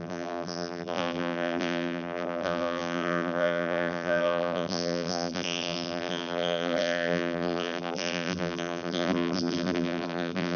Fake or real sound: fake